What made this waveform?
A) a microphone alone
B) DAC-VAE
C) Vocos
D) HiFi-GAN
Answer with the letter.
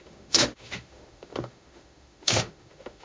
B